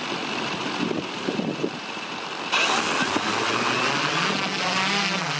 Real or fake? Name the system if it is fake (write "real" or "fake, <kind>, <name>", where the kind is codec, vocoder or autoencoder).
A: real